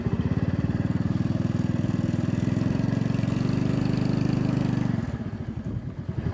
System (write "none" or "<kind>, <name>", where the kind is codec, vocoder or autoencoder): none